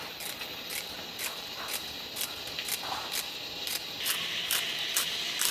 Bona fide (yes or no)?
yes